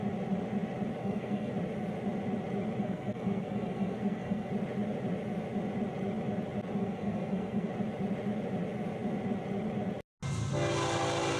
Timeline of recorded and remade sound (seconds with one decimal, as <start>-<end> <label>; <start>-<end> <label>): 0.0-1.0 recorded; 1.0-1.5 remade; 1.5-2.8 recorded; 2.8-4.5 remade; 4.5-6.8 recorded; 6.8-7.7 remade; 7.7-11.4 recorded